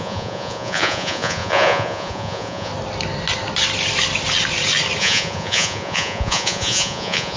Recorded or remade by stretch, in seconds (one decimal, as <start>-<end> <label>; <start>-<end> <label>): 0.0-2.7 remade; 2.7-5.0 recorded; 5.0-7.4 remade